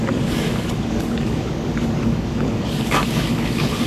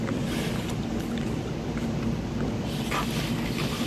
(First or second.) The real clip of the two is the second